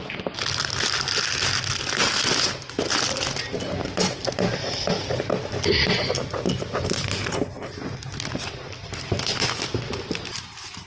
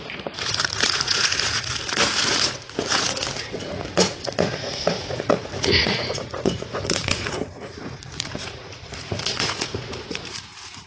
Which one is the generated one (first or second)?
second